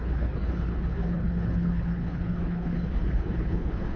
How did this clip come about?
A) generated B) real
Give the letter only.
A